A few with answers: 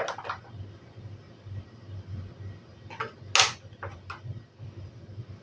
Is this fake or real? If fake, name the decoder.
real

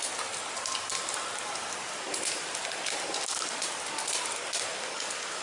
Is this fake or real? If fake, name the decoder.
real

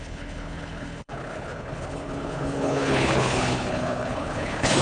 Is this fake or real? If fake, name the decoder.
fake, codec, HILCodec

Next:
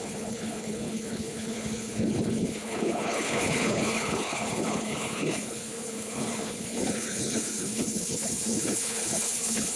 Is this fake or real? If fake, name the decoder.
fake, codec, HILCodec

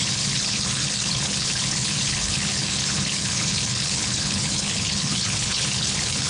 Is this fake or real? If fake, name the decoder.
fake, codec, HILCodec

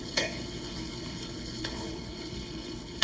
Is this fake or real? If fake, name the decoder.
fake, codec, HILCodec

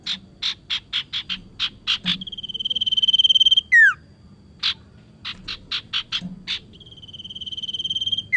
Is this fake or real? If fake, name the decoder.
real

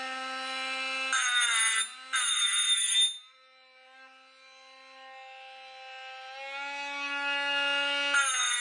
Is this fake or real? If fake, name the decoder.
real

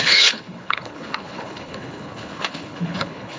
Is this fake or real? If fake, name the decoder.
fake, codec, HILCodec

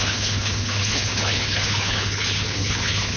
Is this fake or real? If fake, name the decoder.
fake, codec, HILCodec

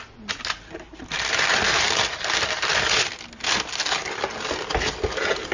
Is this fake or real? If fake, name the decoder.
real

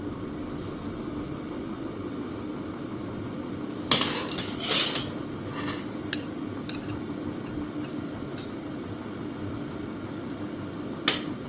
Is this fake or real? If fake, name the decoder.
real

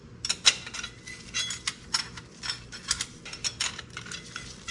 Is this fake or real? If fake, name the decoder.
real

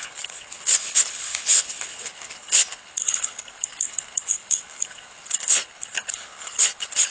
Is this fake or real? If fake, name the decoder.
fake, codec, HILCodec